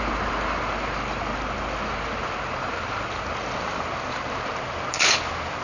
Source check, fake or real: real